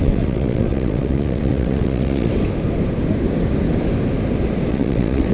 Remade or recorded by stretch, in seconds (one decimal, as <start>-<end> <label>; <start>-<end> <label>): 0.0-2.3 remade; 2.3-4.7 recorded; 4.7-5.3 remade